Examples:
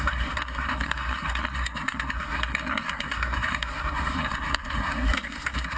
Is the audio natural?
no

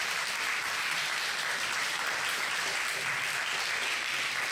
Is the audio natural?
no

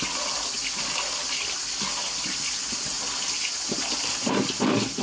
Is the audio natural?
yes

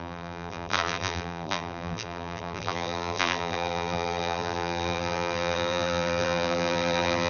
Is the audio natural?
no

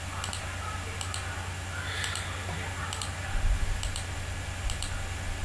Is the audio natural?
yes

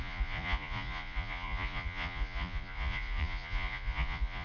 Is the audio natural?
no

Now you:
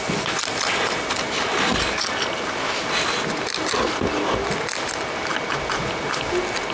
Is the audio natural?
yes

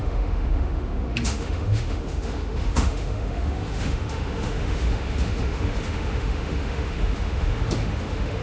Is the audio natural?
no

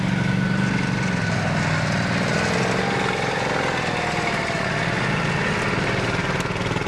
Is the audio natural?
yes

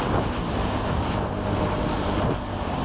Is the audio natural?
yes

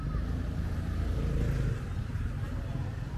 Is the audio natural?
yes